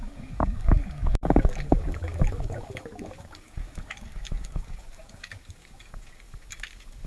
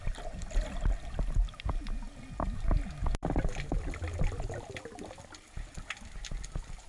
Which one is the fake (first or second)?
first